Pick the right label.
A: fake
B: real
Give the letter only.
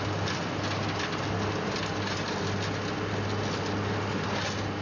B